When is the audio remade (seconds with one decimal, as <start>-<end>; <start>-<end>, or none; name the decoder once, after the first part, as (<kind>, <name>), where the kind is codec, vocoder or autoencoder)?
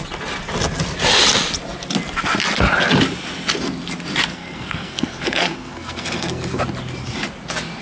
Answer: 4.3-6.6 (codec, SNAC)